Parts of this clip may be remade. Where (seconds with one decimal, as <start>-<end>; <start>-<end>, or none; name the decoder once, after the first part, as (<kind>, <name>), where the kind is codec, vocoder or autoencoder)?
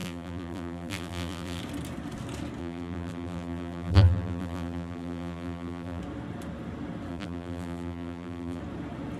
0.0-1.6 (vocoder, BigVGAN v2); 2.6-6.0; 7.1-8.6